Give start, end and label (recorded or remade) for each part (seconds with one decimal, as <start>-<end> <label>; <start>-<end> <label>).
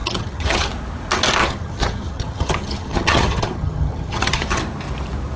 0.0-0.7 remade; 0.7-1.4 recorded; 1.4-4.6 remade; 4.6-5.4 recorded